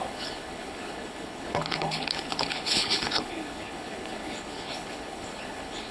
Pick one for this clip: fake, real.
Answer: fake